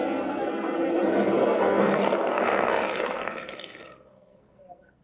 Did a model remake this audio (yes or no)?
yes